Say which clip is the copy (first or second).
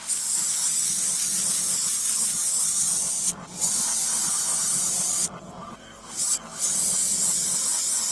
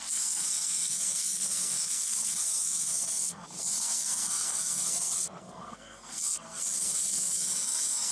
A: second